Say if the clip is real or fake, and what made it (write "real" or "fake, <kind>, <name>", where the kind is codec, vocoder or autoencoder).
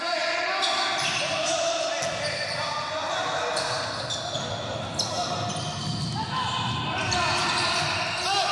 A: real